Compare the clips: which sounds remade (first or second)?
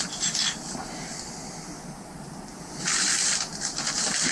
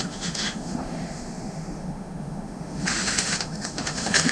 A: second